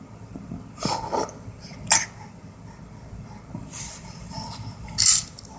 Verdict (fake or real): real